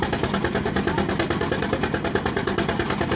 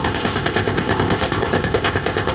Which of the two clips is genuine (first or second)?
first